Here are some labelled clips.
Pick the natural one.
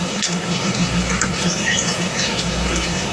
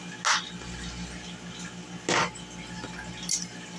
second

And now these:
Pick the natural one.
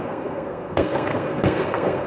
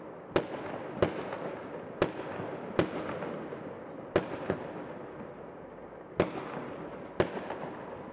second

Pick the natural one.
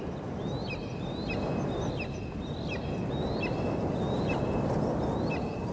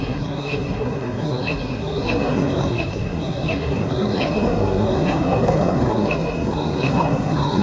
first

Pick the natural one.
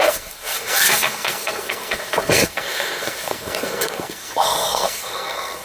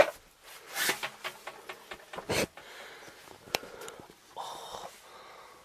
second